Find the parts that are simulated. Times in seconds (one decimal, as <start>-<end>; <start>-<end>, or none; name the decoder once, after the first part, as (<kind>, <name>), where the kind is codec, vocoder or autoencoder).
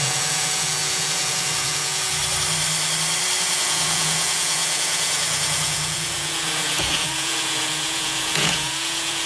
0.0-2.2 (vocoder, Vocos); 3.4-9.3